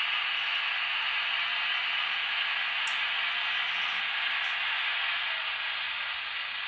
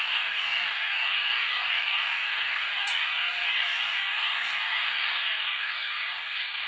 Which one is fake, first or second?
second